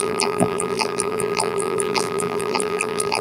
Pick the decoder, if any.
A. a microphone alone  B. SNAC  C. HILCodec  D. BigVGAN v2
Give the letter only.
D